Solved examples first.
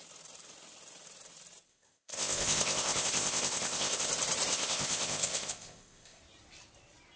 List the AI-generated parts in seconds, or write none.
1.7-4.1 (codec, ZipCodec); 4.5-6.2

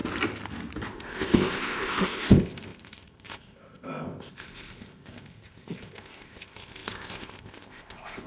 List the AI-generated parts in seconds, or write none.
0.9-8.3 (codec, ZipCodec)